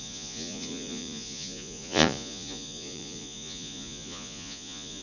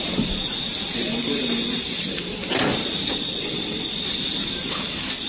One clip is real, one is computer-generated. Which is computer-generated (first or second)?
first